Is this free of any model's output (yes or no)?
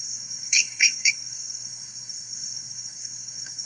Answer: no